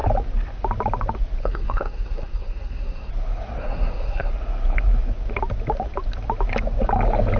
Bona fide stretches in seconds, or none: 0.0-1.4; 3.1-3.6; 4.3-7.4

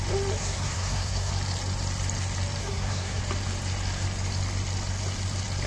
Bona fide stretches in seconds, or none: 0.0-0.4; 1.3-2.6; 3.2-5.7